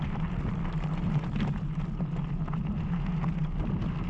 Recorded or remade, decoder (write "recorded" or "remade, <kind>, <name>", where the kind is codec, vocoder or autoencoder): recorded